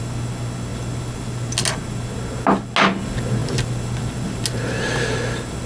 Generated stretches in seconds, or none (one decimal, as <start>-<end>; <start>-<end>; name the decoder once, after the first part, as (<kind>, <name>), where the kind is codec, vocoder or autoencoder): none